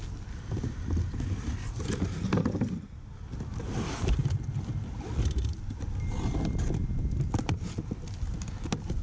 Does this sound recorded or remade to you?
recorded